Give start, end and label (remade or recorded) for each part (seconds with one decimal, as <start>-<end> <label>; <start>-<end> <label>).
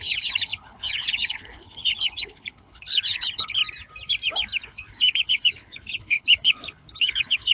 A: 0.0-3.6 remade; 3.6-4.6 recorded; 4.6-7.5 remade